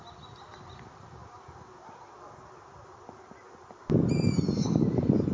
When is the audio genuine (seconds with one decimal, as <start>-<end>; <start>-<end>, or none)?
0.0-5.3